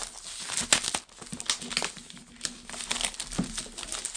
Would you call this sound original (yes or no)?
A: yes